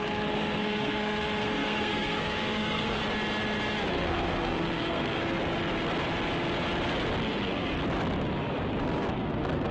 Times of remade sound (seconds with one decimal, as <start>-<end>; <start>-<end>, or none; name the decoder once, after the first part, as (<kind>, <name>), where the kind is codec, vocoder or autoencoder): 0.0-3.0 (codec, SNAC); 3.9-5.4; 7.3-7.7; 8.8-9.7